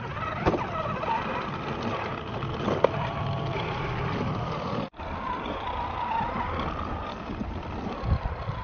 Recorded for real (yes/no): no